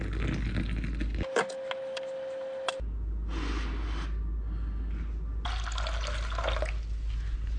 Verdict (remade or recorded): recorded